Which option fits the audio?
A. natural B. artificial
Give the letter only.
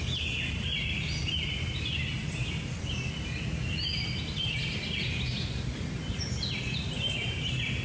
A